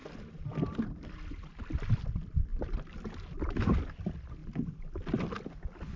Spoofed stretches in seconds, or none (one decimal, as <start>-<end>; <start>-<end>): 0.0-2.5; 3.8-4.4